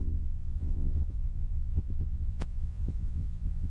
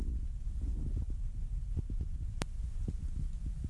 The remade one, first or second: first